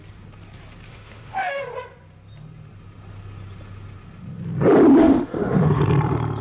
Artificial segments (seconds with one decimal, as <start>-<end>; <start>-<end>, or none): 0.9-1.6; 5.0-5.8

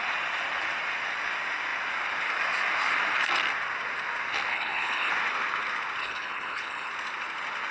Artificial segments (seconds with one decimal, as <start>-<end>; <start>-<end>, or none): 4.5-5.1; 6.0-6.9

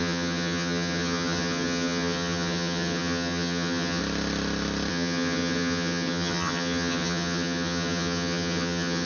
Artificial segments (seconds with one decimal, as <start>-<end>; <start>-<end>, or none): 0.0-4.0; 4.9-9.1

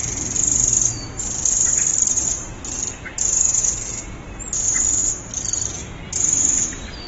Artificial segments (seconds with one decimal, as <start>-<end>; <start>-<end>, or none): 1.9-2.5